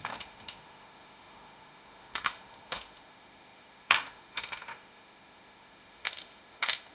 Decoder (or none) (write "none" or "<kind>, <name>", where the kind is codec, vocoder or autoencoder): autoencoder, DAC-VAE